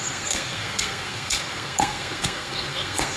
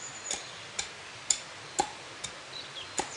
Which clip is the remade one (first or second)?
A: first